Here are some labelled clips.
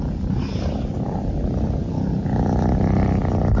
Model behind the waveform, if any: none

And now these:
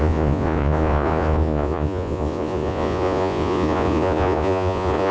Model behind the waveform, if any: vocoder, Vocos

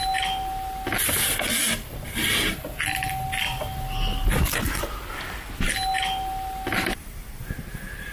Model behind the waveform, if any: none